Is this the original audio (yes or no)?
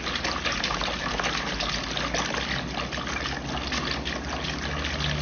yes